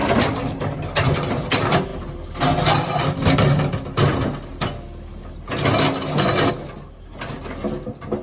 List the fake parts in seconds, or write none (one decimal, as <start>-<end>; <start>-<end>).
none